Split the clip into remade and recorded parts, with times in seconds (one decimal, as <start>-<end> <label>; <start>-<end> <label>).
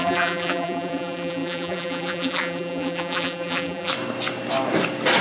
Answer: 0.0-3.9 remade; 3.9-5.2 recorded